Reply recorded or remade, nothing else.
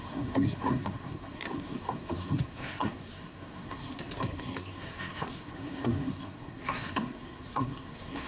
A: remade